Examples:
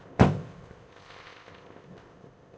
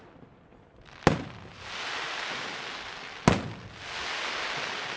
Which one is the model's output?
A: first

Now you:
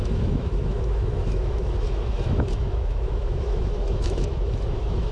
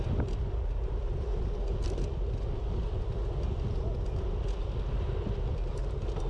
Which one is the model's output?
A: first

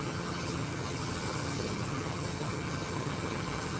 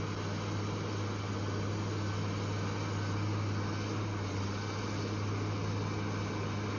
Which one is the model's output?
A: first